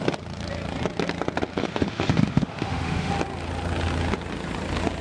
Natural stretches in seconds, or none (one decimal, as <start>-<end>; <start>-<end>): 0.0-1.6; 3.1-5.0